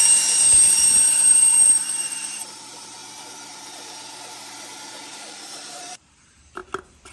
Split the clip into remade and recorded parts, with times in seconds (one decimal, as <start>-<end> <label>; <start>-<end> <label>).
0.0-0.7 recorded; 0.7-3.0 remade; 3.0-5.1 recorded; 5.1-6.6 remade; 6.6-7.1 recorded